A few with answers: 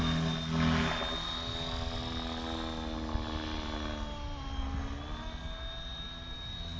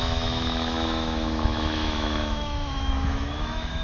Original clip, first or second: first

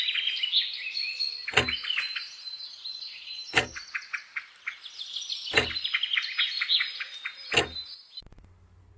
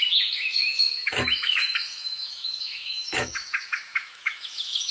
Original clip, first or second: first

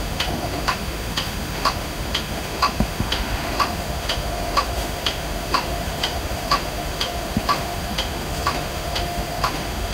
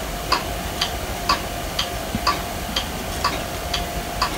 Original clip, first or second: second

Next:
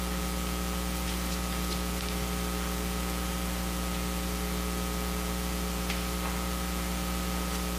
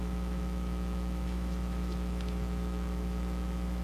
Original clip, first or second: first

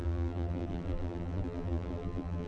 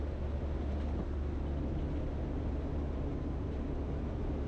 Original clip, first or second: second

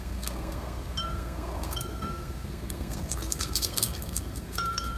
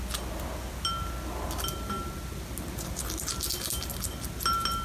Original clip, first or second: second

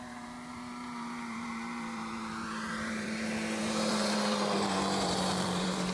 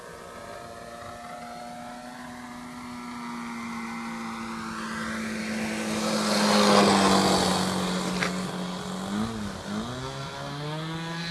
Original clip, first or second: second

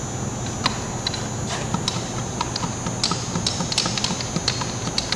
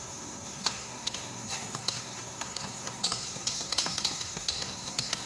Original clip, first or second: first